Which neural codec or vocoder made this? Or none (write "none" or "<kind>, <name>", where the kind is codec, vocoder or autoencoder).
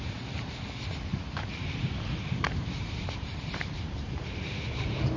vocoder, BigVGAN v2